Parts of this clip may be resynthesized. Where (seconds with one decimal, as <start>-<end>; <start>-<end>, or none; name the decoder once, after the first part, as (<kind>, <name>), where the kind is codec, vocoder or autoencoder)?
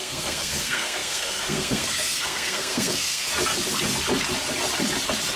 0.0-3.3 (codec, SNAC)